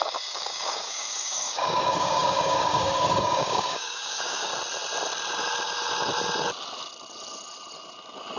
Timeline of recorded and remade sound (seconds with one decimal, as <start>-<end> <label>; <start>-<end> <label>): 0.0-4.5 remade; 4.5-8.4 recorded